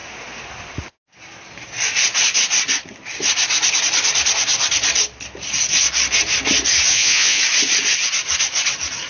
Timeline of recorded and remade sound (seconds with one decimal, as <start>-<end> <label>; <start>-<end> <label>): 0.0-6.9 recorded; 6.9-7.4 remade; 7.4-9.1 recorded